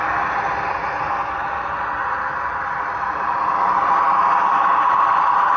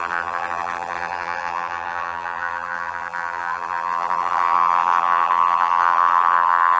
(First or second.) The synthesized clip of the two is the second